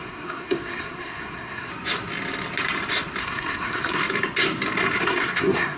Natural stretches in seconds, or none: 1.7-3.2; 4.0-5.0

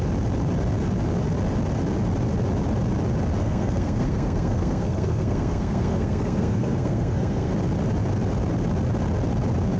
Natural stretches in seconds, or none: 0.0-3.4; 7.5-9.8

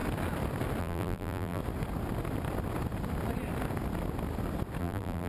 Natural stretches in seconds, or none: 0.0-0.8; 1.6-4.8

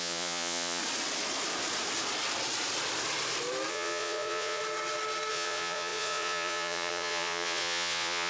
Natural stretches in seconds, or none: 0.8-3.7; 4.6-5.3

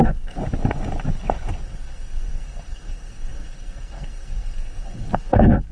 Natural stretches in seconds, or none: 0.4-1.6

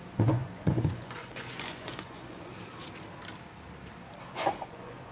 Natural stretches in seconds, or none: 2.5-4.2